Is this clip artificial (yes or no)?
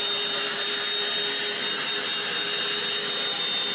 no